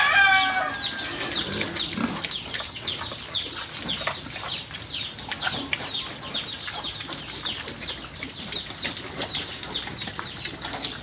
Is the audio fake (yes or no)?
no